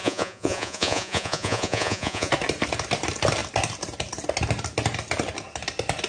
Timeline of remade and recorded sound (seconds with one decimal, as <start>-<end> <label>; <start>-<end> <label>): 0.0-2.3 remade; 2.3-6.1 recorded